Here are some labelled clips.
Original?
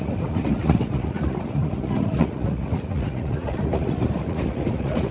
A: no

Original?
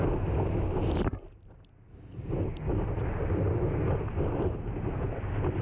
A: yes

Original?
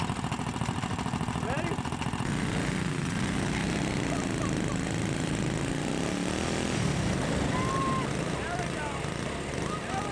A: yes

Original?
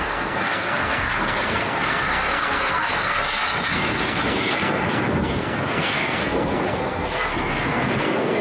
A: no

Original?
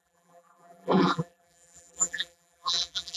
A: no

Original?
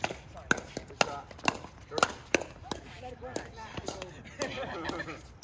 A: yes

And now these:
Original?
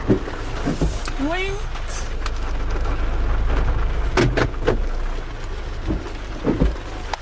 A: yes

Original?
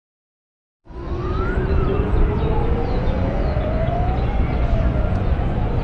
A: no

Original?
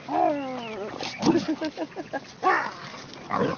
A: yes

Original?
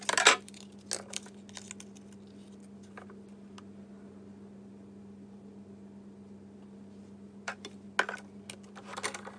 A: yes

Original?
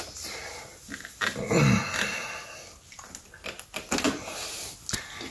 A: yes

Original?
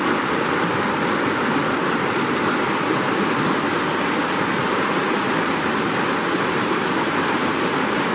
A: yes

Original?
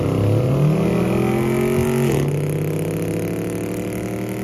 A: yes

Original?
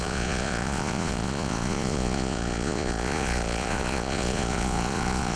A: no